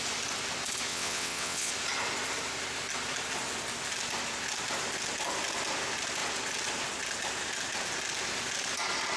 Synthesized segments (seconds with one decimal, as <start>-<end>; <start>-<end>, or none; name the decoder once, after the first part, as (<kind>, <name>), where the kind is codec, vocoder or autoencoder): 0.9-1.7 (vocoder, WaveNeXt)